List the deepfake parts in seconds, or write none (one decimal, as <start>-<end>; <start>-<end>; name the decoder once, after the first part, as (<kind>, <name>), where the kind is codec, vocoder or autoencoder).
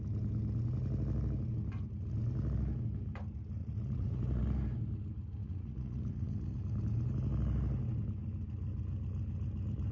3.6-4.4 (vocoder, Vocos); 5.4-6.6